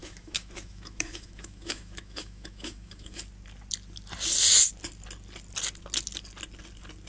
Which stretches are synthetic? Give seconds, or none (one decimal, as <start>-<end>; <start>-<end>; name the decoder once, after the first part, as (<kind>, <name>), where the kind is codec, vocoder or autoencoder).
0.0-3.2 (autoencoder, DAC-VAE)